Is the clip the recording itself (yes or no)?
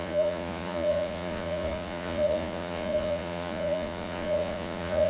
no